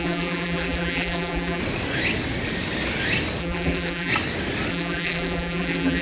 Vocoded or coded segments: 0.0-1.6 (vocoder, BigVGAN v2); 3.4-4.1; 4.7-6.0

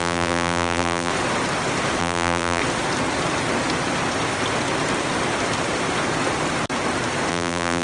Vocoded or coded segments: 0.0-1.1 (vocoder, BigVGAN v2); 2.0-2.6; 7.3-7.8

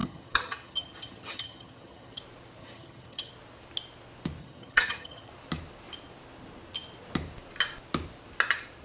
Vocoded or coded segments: 0.0-2.2 (vocoder, HiFi-GAN); 2.6-3.3; 4.4-5.3